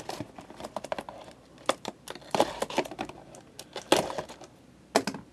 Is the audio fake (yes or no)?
no